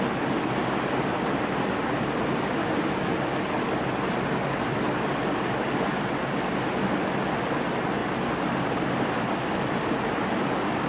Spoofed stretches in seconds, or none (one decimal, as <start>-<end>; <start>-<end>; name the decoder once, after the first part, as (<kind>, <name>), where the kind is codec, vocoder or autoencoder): 2.6-3.2 (codec, DAC)